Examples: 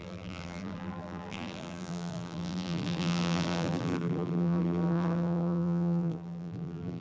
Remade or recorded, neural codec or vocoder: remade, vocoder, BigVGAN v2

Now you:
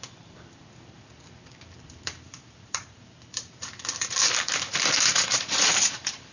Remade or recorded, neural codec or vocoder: remade, vocoder, BigVGAN v2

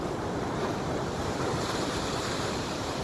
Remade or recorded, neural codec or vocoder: remade, vocoder, BigVGAN v2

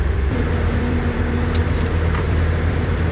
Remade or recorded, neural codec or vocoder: remade, vocoder, BigVGAN v2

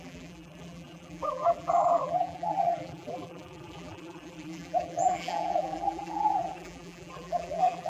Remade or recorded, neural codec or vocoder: remade, vocoder, BigVGAN v2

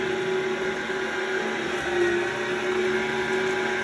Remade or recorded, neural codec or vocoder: recorded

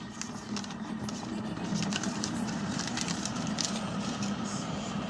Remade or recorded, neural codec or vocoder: remade, vocoder, BigVGAN v2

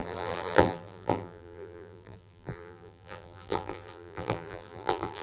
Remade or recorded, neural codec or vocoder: remade, vocoder, BigVGAN v2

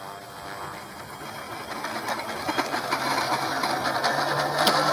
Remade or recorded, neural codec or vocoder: recorded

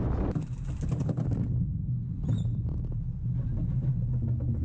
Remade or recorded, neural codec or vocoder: recorded